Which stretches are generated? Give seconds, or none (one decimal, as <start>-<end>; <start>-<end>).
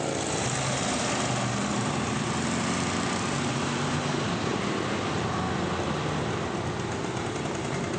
none